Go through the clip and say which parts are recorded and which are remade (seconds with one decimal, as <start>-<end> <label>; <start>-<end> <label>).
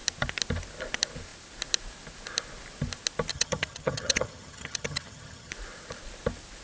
0.0-3.3 recorded; 3.3-5.5 remade; 5.5-6.6 recorded